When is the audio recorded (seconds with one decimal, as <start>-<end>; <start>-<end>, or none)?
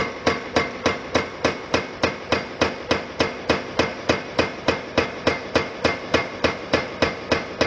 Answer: 0.0-3.9; 5.4-6.2; 6.9-7.7